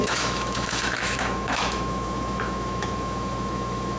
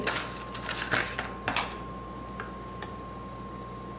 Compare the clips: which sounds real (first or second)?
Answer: second